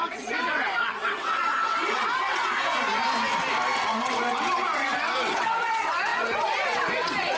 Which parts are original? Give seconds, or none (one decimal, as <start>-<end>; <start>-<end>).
2.7-3.8